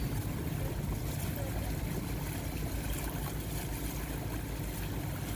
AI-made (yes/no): no